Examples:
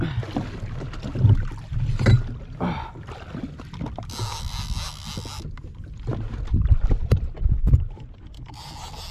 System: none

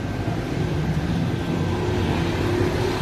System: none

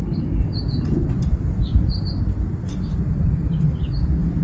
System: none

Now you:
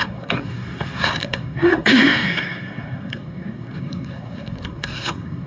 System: codec, SNAC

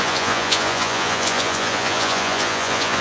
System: vocoder, Vocos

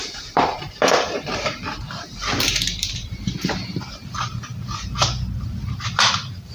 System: vocoder, BigVGAN v2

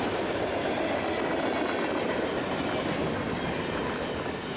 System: none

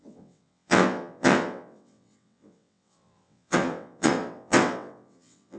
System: vocoder, WaveNeXt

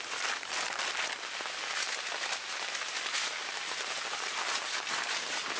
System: none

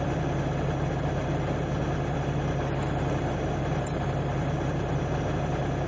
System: none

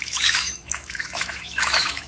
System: autoencoder, DAC-VAE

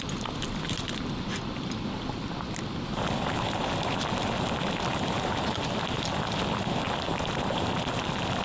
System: none